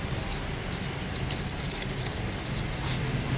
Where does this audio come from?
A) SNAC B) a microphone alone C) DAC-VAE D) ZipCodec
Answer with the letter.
B